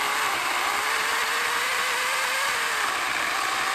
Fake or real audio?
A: real